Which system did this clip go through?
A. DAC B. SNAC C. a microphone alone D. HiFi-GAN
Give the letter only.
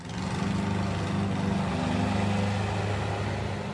C